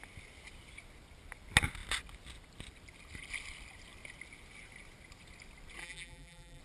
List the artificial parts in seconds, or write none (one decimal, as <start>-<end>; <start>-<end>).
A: 5.8-6.6